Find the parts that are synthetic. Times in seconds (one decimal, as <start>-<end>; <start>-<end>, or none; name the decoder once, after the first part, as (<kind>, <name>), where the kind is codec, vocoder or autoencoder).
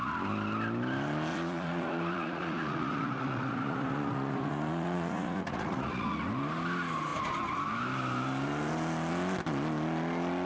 1.3-6.2 (vocoder, Vocos)